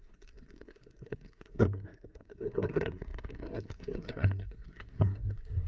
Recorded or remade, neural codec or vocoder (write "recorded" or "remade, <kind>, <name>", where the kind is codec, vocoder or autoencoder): remade, codec, SNAC